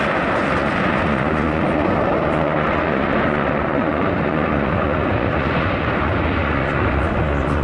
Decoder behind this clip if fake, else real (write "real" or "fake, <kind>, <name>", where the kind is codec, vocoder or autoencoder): fake, vocoder, Vocos